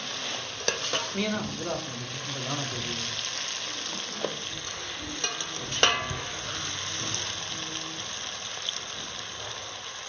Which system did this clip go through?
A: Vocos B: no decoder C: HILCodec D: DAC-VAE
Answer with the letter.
B